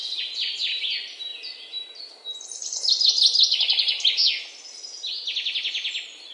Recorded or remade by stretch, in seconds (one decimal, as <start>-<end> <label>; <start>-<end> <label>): 0.0-6.3 recorded